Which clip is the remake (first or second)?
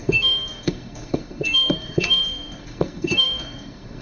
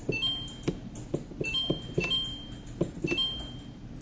first